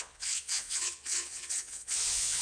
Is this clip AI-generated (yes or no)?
yes